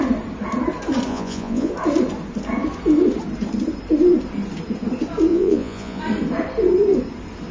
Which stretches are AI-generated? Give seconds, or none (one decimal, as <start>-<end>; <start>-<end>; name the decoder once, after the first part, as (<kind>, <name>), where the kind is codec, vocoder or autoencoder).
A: 1.1-1.7 (vocoder, Vocos); 5.3-6.0